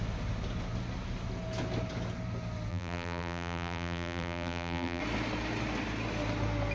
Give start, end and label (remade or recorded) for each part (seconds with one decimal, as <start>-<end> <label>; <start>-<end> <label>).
0.0-2.7 recorded; 2.7-5.0 remade; 5.0-6.7 recorded